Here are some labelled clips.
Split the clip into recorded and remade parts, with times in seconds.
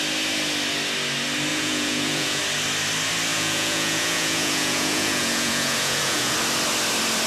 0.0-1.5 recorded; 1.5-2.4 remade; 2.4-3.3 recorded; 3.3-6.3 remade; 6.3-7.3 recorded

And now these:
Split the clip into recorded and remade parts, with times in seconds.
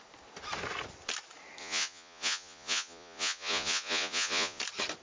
0.0-1.6 recorded; 1.6-4.6 remade; 4.6-5.0 recorded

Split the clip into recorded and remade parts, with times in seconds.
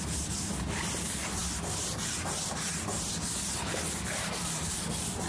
0.0-5.3 recorded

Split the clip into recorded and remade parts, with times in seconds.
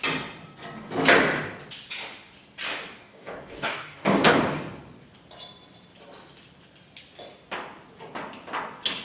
0.0-3.0 recorded; 3.0-4.4 remade; 4.4-9.0 recorded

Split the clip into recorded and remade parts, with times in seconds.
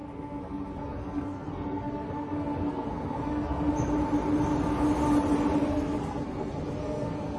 0.0-3.7 remade; 3.7-5.7 recorded; 5.7-7.4 remade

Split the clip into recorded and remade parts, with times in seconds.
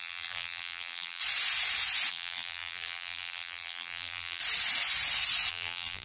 0.0-1.2 remade; 1.2-2.1 recorded; 2.1-4.4 remade; 4.4-5.5 recorded; 5.5-6.0 remade